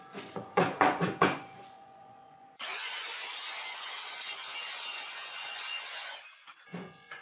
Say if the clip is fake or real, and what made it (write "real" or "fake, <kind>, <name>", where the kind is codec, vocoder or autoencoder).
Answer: fake, vocoder, Vocos